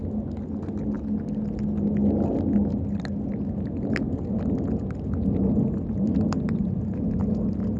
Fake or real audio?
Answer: real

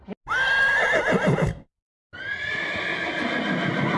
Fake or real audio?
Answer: real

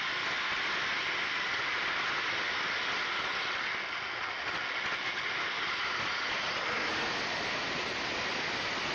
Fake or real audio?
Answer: real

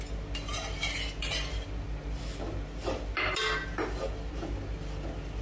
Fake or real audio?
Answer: real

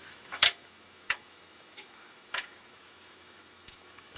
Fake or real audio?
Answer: fake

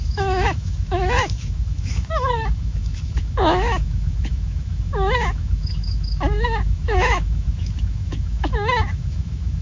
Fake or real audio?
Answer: fake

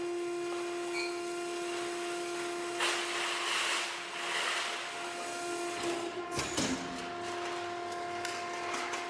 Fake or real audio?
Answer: real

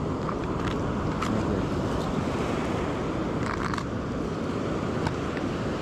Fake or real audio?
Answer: real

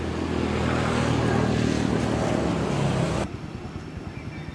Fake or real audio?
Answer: real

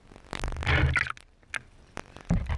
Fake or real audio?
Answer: real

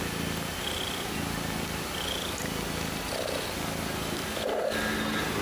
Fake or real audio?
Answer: real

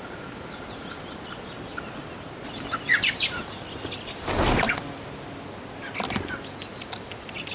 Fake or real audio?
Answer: real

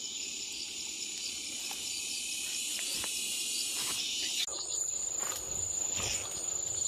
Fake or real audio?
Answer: real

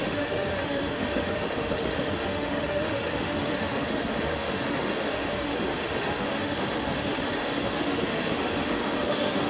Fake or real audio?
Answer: fake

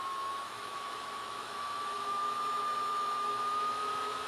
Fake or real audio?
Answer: fake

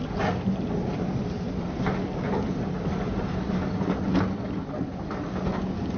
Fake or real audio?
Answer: real